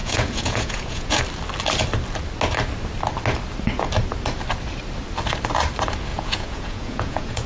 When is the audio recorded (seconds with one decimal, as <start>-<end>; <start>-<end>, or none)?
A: 1.2-6.1